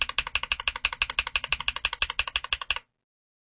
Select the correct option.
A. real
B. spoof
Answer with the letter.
A